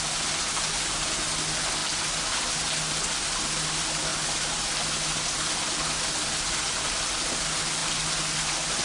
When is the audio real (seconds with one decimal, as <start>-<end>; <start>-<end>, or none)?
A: 0.0-8.8